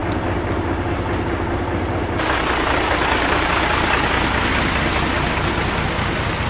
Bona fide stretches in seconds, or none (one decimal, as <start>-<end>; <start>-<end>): 0.0-6.5